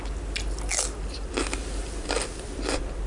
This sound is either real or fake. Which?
real